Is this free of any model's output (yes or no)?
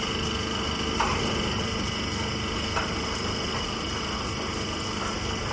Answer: yes